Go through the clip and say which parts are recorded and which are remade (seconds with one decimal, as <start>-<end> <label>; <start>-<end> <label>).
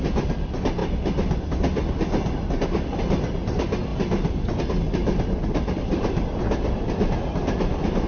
0.0-3.9 recorded; 3.9-4.6 remade; 4.6-5.0 recorded; 5.0-7.1 remade; 7.1-8.1 recorded